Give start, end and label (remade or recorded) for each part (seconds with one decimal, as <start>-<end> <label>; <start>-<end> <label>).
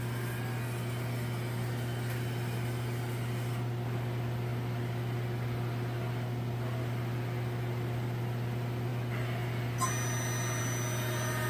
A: 0.0-11.5 recorded